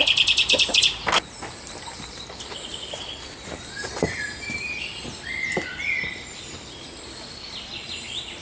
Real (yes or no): yes